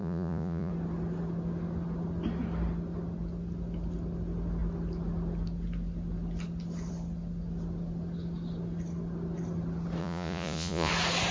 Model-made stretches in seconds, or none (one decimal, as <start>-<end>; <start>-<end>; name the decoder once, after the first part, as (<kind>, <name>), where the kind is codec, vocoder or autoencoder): 0.0-0.7 (vocoder, Vocos); 10.0-10.9